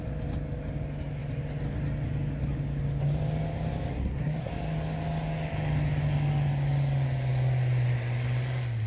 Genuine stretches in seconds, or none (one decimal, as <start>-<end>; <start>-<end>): 0.0-3.9; 4.5-8.9